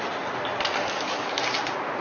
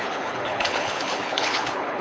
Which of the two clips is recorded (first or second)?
first